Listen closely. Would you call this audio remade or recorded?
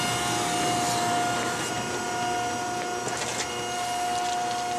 recorded